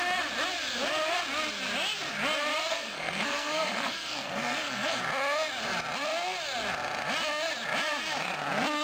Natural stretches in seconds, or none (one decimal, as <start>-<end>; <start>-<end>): 0.0-2.7; 5.0-8.8